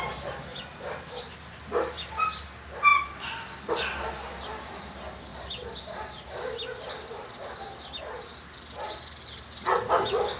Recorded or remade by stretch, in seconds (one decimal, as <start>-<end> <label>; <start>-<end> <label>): 0.0-10.4 recorded